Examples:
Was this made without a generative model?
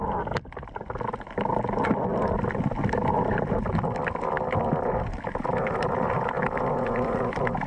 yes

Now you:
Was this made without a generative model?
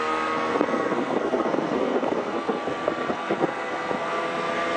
no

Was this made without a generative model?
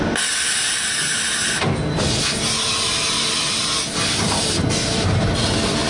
yes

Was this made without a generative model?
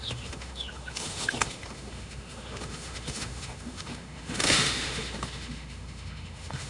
no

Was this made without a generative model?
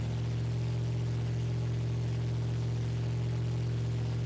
yes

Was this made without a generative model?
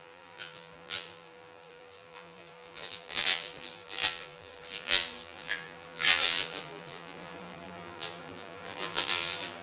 no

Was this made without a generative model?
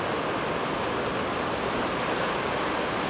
yes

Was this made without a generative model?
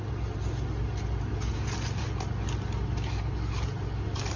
yes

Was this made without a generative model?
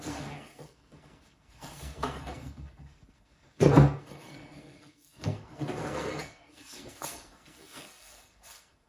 no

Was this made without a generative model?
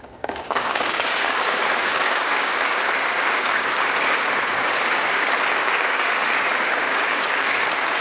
no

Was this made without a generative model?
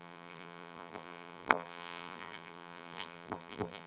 no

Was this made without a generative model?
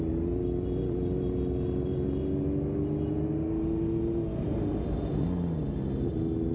yes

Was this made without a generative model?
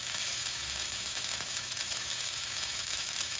no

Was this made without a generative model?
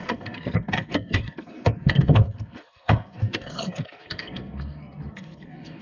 no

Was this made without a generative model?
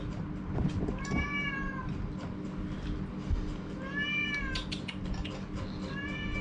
yes